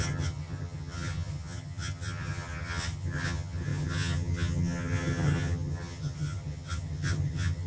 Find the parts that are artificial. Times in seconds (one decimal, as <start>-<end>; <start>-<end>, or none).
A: 0.0-7.7